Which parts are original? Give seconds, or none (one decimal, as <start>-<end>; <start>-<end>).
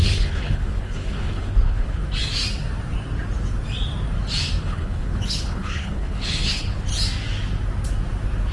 2.0-4.6; 6.9-8.5